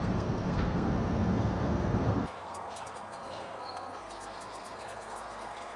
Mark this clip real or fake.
fake